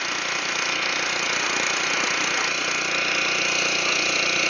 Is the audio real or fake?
real